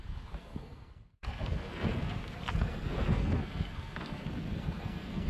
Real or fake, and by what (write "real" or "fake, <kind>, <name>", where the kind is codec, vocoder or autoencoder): fake, codec, SNAC